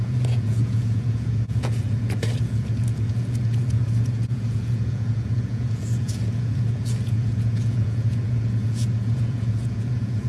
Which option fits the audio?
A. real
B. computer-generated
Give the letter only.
B